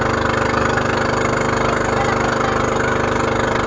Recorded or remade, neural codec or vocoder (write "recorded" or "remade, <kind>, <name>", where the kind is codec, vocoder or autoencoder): recorded